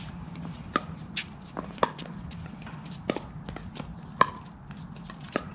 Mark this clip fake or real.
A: real